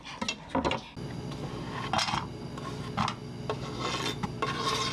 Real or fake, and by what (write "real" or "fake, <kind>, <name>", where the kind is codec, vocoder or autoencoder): real